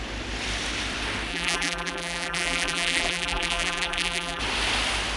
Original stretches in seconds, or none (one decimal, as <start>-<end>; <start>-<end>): 0.0-1.3; 4.4-5.2